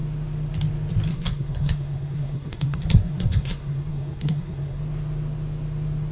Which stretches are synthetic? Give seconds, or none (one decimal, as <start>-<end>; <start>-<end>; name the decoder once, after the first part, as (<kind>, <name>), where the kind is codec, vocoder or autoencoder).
1.1-4.8 (codec, SNAC)